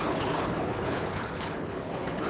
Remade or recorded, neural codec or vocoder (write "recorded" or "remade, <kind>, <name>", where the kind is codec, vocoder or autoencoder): remade, codec, HILCodec